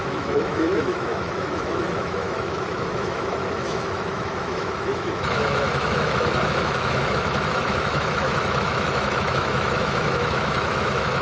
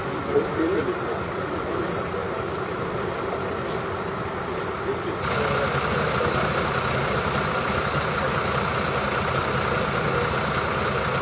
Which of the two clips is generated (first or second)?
first